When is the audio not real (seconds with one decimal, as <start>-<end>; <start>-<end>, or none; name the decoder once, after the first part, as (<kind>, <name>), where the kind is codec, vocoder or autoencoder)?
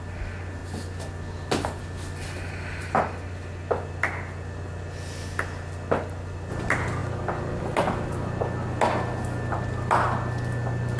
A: none